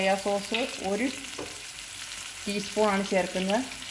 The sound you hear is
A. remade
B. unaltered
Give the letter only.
B